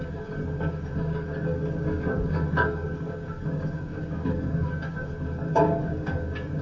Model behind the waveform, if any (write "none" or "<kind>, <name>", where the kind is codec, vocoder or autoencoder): codec, DAC